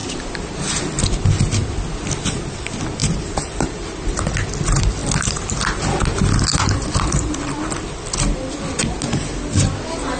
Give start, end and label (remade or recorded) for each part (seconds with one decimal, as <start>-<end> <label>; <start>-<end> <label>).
0.0-3.0 recorded; 3.0-4.1 remade; 4.1-10.2 recorded